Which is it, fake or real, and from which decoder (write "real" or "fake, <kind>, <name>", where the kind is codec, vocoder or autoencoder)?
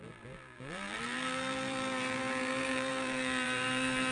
fake, vocoder, BigVGAN v2